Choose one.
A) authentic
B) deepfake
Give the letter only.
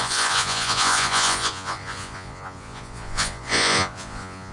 B